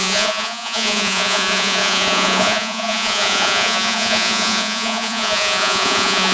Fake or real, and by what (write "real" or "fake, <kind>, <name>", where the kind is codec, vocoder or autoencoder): fake, vocoder, Vocos